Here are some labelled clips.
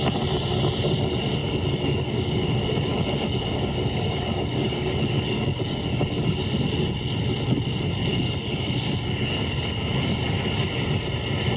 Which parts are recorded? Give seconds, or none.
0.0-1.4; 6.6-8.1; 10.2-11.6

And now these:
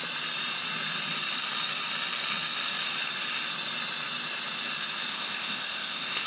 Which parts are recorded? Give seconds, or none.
0.0-5.1